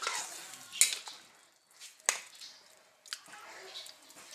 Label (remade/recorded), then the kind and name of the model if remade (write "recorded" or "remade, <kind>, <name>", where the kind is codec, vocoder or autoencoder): recorded